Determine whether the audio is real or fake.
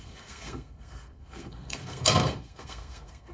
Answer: fake